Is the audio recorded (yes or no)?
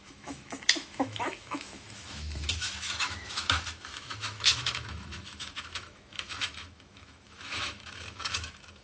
no